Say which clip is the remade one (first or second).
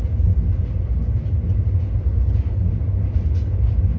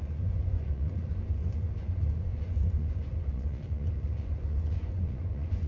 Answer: second